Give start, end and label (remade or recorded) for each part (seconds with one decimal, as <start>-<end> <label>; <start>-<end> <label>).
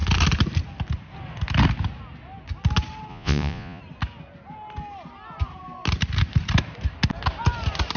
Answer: 0.0-3.1 recorded; 3.1-3.8 remade; 3.8-8.0 recorded